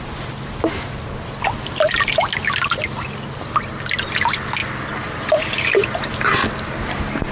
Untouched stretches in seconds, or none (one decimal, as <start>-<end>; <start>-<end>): 0.0-7.3